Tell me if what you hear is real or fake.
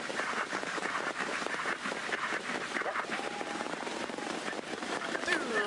fake